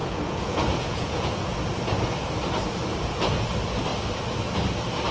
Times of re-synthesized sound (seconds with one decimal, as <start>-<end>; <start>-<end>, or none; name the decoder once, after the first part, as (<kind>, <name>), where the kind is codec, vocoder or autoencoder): 0.0-1.6 (vocoder, Vocos); 2.9-3.5